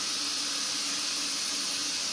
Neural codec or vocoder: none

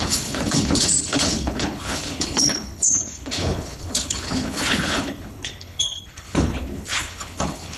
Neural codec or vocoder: codec, HILCodec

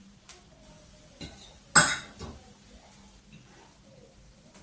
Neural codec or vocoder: none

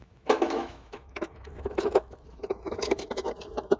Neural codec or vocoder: autoencoder, DAC-VAE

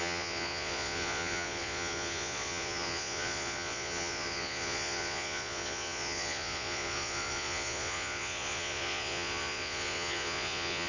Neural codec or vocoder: vocoder, Vocos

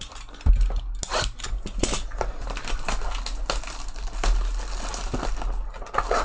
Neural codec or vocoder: none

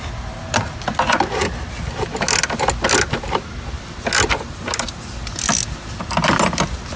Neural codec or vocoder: none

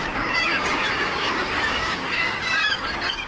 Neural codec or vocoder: codec, DAC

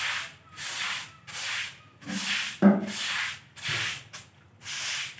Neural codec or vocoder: none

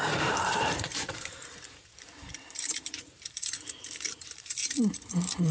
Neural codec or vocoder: vocoder, BigVGAN v2